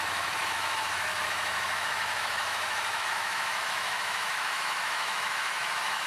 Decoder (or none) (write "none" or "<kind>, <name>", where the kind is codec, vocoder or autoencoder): autoencoder, DAC-VAE